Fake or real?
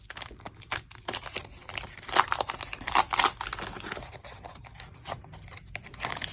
real